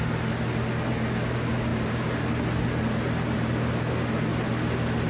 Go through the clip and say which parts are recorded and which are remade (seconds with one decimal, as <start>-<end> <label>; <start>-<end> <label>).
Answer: 0.0-5.1 recorded